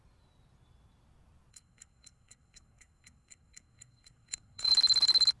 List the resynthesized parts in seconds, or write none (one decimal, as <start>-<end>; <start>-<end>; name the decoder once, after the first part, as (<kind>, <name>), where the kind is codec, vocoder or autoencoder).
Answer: 1.5-4.7 (codec, SNAC)